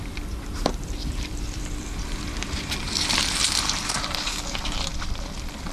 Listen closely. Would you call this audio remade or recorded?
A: remade